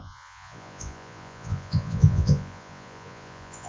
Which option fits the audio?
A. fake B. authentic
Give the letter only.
A